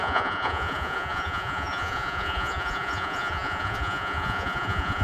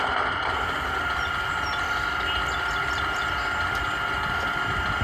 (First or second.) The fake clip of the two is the first